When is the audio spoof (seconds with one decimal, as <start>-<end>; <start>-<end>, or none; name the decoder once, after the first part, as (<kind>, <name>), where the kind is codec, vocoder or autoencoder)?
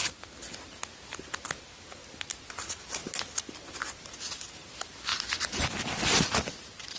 none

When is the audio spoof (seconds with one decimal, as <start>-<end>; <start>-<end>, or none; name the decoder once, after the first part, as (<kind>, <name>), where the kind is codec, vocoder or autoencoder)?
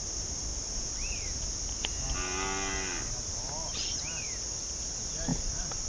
none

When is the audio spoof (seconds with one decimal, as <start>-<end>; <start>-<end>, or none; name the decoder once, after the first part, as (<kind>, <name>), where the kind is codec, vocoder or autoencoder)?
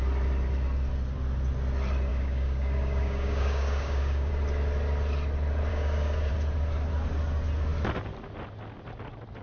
2.1-4.3 (codec, DAC); 5.7-6.3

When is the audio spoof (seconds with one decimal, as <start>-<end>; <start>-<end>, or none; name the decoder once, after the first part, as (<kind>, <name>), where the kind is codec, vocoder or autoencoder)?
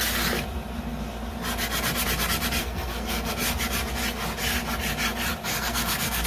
2.6-3.3 (codec, SNAC); 5.5-6.3